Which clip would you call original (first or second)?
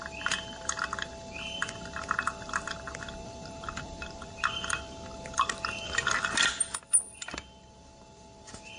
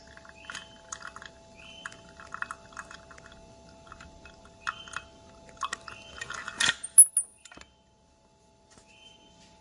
second